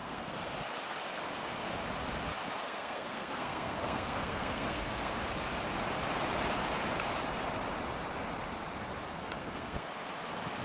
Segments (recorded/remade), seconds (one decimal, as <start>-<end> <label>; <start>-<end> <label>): 0.0-0.5 remade; 0.5-2.6 recorded; 2.6-5.1 remade; 5.1-9.1 recorded; 9.1-9.9 remade; 9.9-10.6 recorded